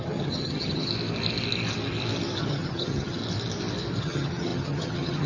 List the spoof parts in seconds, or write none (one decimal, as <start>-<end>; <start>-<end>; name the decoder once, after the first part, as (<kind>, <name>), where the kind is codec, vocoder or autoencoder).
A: 0.0-0.9 (vocoder, HiFi-GAN); 2.4-3.2; 4.0-5.3